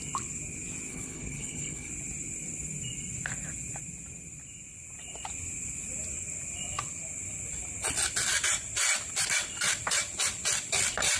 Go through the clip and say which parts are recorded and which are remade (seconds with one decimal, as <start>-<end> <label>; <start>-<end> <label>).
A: 0.0-0.9 recorded; 0.9-1.9 remade; 1.9-11.2 recorded